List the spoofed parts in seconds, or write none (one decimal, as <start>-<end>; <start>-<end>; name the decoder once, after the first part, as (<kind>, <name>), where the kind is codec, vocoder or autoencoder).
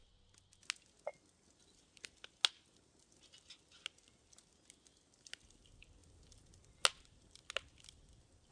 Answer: none